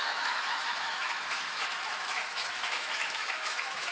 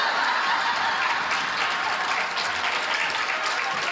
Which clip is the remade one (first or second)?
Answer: first